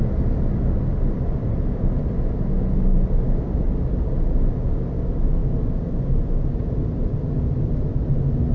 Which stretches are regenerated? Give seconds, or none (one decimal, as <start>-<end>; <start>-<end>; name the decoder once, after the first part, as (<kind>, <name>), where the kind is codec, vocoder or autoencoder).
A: none